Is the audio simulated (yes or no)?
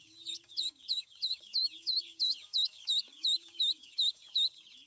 yes